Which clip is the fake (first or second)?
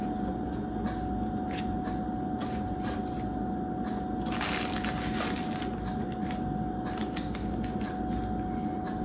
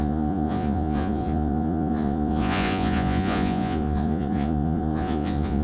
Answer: second